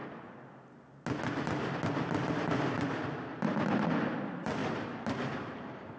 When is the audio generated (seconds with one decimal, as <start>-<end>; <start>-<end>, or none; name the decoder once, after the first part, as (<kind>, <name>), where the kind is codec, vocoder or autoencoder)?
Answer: 3.3-4.1 (vocoder, BigVGAN v2); 4.6-6.0